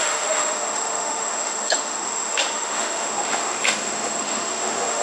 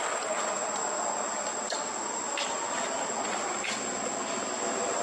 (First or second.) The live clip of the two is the second